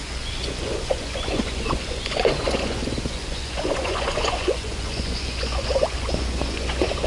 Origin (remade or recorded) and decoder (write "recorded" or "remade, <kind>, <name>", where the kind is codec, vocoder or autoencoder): remade, vocoder, Vocos